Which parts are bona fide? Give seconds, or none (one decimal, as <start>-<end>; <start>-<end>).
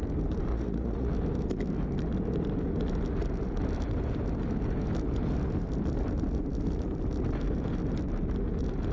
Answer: 0.0-0.5; 1.1-8.9